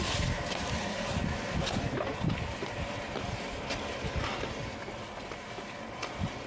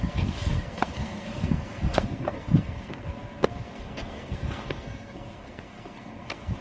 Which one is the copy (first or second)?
second